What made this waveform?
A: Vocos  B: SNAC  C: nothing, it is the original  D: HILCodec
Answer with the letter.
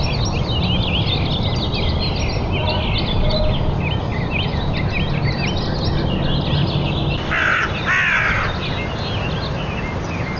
C